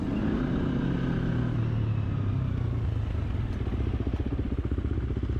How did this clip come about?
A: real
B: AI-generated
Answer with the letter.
A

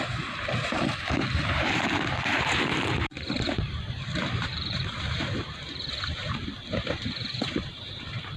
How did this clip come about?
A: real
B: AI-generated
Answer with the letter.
B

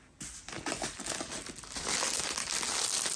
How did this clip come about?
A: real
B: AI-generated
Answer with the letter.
A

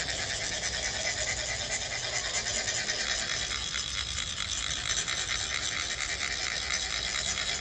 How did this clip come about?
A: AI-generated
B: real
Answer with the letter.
B